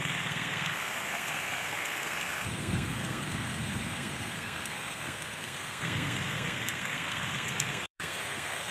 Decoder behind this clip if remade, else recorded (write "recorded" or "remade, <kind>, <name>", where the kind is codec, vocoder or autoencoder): remade, codec, SNAC